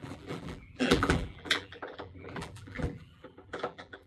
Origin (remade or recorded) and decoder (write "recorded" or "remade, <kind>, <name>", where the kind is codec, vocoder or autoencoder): remade, vocoder, BigVGAN v2